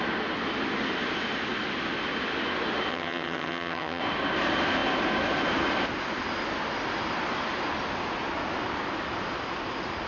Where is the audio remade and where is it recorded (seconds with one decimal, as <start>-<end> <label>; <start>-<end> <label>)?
0.0-2.9 recorded; 2.9-4.0 remade; 4.0-10.1 recorded